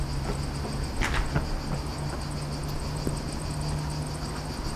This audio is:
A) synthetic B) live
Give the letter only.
B